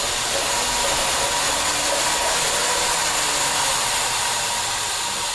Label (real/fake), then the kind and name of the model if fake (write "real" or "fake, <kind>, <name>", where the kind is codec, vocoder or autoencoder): real